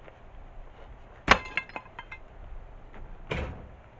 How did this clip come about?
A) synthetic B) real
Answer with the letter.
B